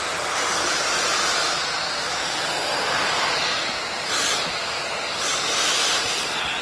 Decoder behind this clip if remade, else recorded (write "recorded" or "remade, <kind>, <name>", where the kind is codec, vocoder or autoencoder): recorded